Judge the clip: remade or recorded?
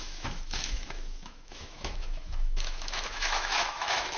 remade